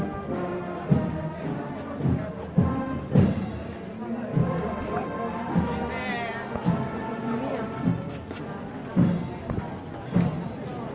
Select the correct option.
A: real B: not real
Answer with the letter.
A